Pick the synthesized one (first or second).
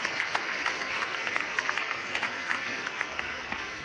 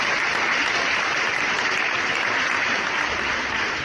first